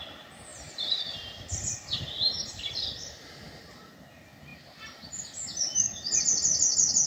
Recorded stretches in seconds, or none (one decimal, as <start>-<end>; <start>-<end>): 0.0-7.1